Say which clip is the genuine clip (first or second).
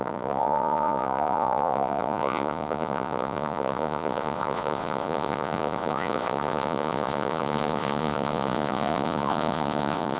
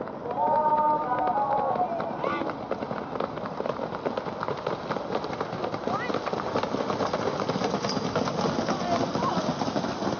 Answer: second